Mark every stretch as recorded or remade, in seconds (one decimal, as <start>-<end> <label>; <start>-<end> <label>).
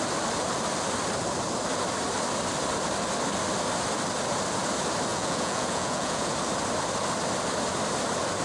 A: 0.0-5.1 recorded; 5.1-6.3 remade; 6.3-8.4 recorded